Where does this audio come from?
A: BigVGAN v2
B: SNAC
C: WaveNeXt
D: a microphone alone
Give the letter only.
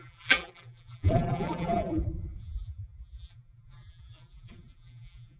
A